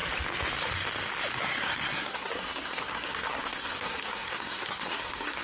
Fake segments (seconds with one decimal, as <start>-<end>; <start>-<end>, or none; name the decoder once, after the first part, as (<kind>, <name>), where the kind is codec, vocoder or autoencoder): 1.4-5.4 (codec, SNAC)